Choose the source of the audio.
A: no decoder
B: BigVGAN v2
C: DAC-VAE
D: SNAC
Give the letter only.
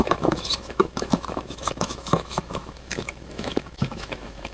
C